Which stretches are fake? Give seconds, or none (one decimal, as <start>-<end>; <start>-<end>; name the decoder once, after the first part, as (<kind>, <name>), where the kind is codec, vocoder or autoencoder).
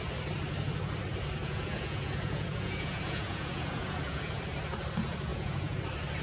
1.4-4.4 (vocoder, Vocos); 5.3-5.8